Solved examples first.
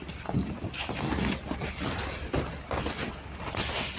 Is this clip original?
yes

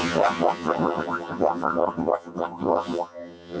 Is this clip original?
no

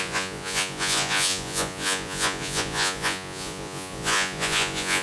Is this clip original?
no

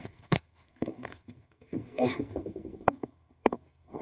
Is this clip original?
no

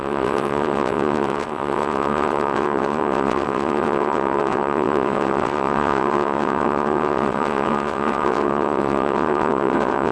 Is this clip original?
no